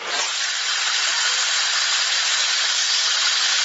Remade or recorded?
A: recorded